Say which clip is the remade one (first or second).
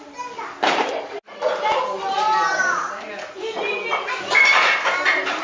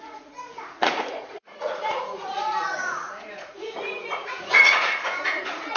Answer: second